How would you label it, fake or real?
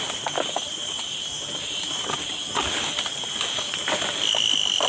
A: real